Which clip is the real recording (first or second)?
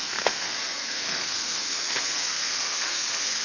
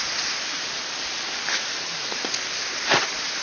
second